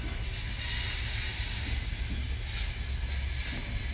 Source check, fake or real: real